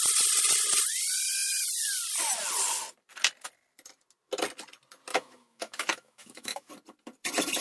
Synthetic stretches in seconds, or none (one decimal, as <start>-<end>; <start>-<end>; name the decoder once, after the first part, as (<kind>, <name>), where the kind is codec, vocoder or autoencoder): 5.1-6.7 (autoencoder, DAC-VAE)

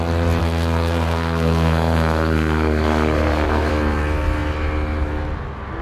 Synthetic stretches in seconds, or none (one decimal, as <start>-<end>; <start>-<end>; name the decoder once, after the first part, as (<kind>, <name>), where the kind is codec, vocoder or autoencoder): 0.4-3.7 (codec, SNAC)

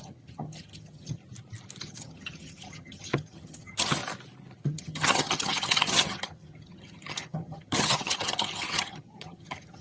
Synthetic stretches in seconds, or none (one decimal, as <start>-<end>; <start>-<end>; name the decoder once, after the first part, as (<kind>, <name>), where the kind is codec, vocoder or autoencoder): 0.0-1.2 (vocoder, HiFi-GAN); 1.8-4.0; 4.6-9.8

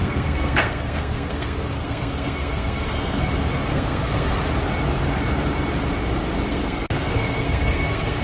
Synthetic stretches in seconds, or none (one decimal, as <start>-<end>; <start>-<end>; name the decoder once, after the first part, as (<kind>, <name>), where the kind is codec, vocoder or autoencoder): 0.0-3.3 (codec, SNAC); 3.7-4.4; 6.5-8.2

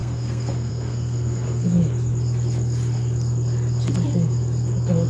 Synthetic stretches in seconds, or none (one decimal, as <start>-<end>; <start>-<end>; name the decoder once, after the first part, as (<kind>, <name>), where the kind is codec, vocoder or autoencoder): 0.0-1.8 (codec, SNAC)

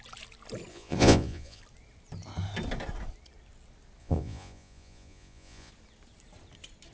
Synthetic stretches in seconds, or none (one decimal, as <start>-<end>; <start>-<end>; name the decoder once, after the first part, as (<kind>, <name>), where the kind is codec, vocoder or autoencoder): 0.7-1.6 (vocoder, Vocos); 4.0-5.7